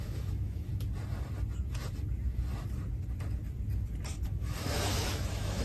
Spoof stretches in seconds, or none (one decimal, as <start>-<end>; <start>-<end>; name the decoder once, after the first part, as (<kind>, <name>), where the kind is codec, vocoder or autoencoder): 0.0-0.7 (autoencoder, DAC-VAE); 4.1-5.6